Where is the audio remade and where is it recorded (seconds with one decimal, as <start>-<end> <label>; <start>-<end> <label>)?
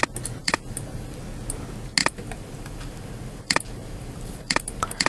0.0-0.4 recorded; 0.4-1.2 remade; 1.2-2.0 recorded; 2.0-5.1 remade